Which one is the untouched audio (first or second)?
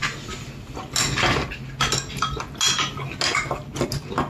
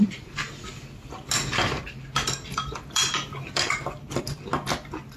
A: first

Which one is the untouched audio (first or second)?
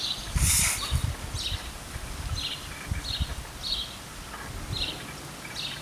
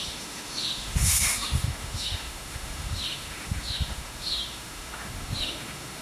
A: first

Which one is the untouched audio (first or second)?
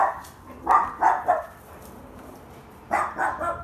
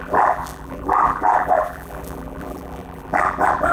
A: first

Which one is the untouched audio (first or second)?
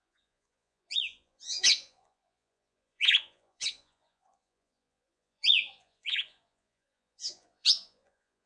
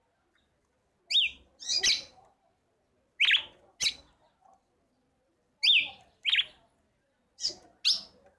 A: second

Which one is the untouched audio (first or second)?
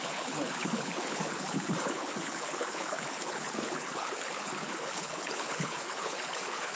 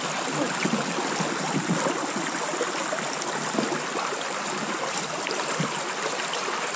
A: second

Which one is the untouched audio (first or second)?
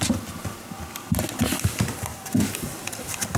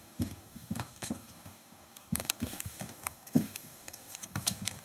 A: first